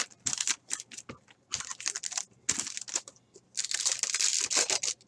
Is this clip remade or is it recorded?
recorded